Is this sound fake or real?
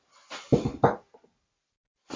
real